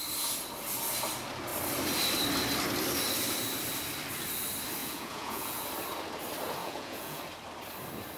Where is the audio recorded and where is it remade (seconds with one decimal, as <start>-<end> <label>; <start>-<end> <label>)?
0.0-4.8 recorded; 4.8-5.6 remade; 5.6-6.6 recorded; 6.6-7.2 remade; 7.2-8.2 recorded